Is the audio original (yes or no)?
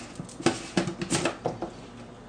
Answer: yes